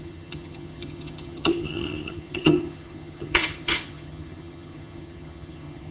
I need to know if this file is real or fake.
fake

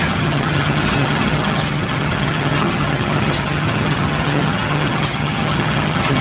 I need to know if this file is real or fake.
fake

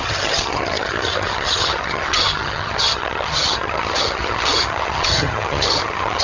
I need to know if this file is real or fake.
fake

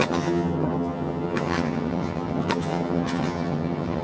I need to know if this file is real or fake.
fake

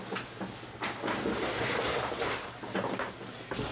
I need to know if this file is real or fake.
real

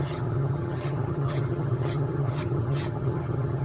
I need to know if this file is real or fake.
fake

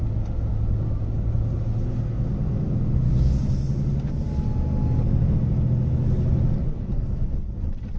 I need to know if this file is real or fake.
real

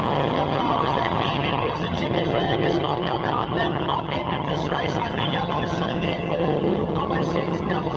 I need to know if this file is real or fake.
fake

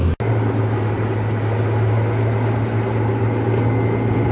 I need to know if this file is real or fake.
real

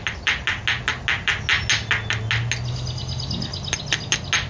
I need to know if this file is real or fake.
real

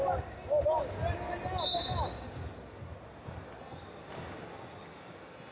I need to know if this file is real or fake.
real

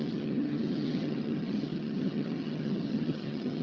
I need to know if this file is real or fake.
fake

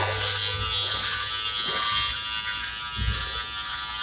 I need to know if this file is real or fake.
real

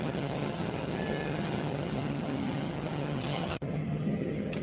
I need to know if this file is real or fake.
fake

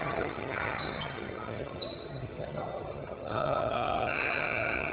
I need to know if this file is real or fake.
fake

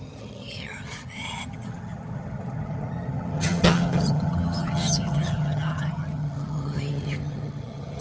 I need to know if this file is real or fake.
fake